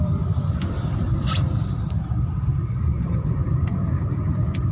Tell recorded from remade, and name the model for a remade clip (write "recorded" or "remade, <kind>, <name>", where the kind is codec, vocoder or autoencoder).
remade, vocoder, BigVGAN v2